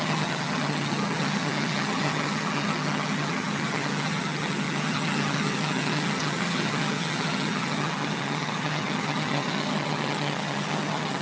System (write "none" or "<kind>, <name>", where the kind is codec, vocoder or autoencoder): vocoder, HiFi-GAN